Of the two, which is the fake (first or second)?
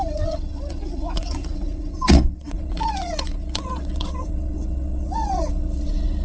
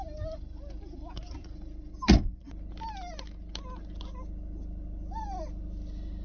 first